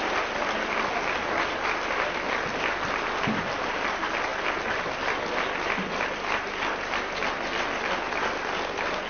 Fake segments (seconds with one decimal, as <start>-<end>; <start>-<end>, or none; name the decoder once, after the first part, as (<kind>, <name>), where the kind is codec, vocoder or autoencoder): none